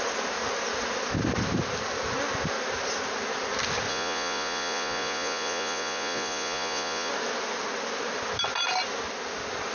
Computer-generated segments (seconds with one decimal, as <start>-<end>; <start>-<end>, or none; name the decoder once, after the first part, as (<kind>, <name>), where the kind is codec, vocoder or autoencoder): 3.9-7.1 (vocoder, Vocos)